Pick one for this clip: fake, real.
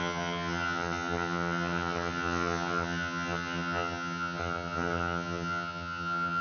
fake